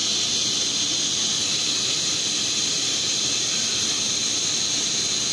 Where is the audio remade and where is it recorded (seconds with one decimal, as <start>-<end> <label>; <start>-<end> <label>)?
0.0-5.3 recorded